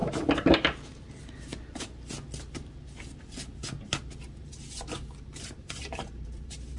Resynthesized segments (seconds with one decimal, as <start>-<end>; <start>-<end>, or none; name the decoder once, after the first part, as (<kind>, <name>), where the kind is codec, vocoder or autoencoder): 0.9-1.5 (vocoder, BigVGAN v2); 5.2-6.8